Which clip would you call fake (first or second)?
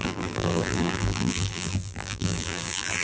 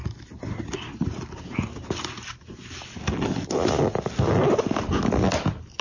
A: first